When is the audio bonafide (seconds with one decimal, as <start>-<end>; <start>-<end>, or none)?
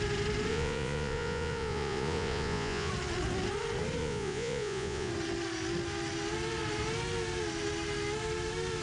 0.0-0.5; 2.9-4.0; 5.1-8.8